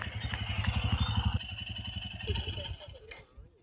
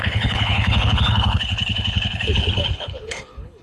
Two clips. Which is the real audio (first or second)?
first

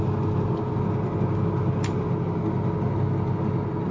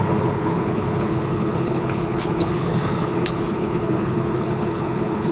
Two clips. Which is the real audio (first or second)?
first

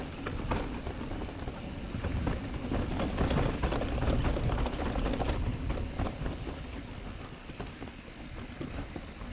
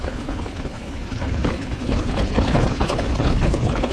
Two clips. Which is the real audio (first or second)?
first